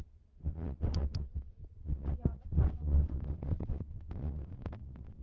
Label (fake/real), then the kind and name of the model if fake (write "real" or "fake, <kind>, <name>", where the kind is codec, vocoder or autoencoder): fake, vocoder, WaveNeXt